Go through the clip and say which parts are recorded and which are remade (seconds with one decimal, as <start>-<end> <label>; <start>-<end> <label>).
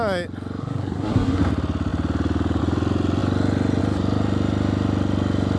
0.0-0.6 recorded; 0.6-1.4 remade; 1.4-5.6 recorded